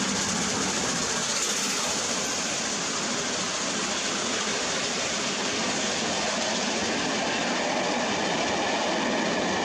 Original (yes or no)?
yes